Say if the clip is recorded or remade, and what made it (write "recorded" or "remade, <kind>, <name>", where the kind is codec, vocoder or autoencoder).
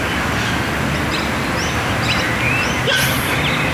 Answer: recorded